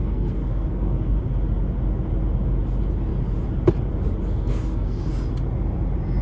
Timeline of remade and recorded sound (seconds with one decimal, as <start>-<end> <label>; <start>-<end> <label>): 0.0-1.2 remade; 1.2-4.3 recorded; 4.3-5.1 remade; 5.1-6.2 recorded